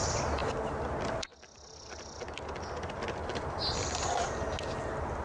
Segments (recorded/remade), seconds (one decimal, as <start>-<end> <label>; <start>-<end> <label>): 0.0-3.2 recorded; 3.2-4.0 remade; 4.0-5.2 recorded